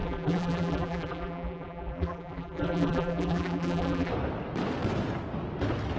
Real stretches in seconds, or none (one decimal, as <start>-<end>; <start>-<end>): 4.1-6.0